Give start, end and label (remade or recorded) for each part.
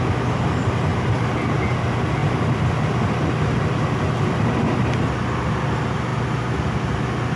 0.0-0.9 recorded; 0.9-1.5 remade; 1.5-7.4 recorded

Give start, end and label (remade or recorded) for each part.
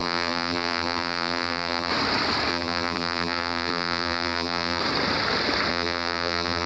0.0-1.9 remade; 1.9-2.5 recorded; 2.5-4.8 remade; 4.8-5.7 recorded; 5.7-6.7 remade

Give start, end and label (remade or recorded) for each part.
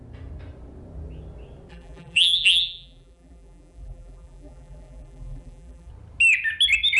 0.0-1.7 recorded; 1.7-5.9 remade; 5.9-7.0 recorded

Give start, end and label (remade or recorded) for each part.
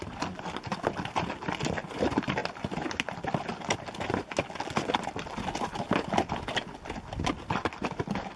0.0-8.4 recorded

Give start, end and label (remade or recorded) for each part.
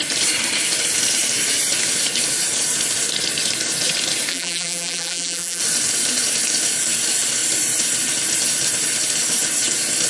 0.0-4.3 recorded; 4.3-5.6 remade; 5.6-10.1 recorded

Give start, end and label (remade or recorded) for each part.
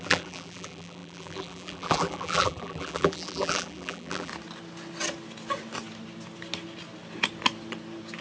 0.0-4.3 remade; 4.3-8.2 recorded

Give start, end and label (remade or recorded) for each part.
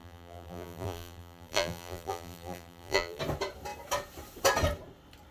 0.0-3.2 remade; 3.2-5.3 recorded